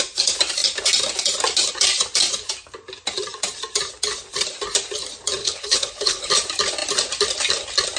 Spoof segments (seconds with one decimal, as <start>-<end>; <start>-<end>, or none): 5.4-6.3